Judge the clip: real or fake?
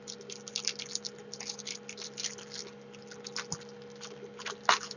real